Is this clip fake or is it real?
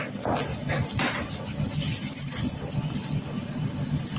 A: real